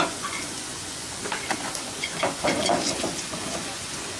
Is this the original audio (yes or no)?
no